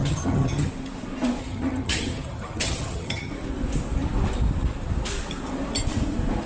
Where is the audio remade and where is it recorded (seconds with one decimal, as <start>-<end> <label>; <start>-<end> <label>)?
0.0-0.7 remade; 0.7-1.4 recorded; 1.4-3.3 remade; 3.3-6.5 recorded